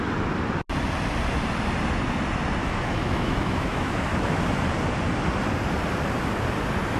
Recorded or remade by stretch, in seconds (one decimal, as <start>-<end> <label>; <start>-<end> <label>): 0.0-2.6 recorded; 2.6-4.4 remade; 4.4-7.0 recorded

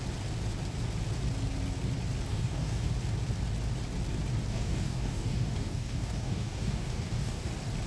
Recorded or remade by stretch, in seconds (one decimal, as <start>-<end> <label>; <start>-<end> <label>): 0.0-2.3 recorded; 2.3-2.9 remade; 2.9-4.5 recorded; 4.5-7.5 remade; 7.5-7.9 recorded

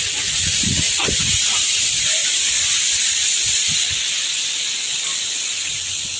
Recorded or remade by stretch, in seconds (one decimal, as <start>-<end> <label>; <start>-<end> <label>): 0.0-1.0 remade; 1.0-6.2 recorded

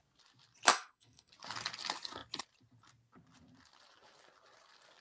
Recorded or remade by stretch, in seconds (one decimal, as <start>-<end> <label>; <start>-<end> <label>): 0.0-0.7 recorded; 0.7-1.3 remade; 1.3-5.0 recorded

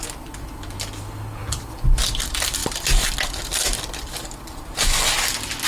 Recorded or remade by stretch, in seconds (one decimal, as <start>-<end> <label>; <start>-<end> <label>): 0.0-1.4 recorded; 1.4-2.0 remade; 2.0-5.7 recorded